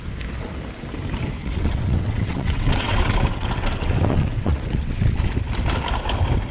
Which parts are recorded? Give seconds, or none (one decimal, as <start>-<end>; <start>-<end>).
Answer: 0.0-1.4; 5.3-6.5